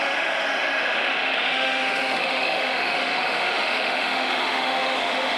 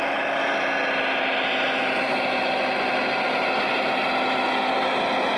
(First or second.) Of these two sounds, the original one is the second